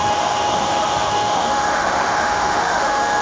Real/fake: fake